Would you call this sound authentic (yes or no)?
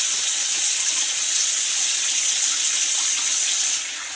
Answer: no